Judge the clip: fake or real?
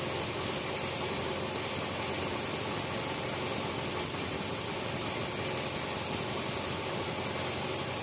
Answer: real